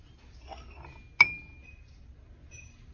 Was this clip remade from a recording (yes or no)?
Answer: no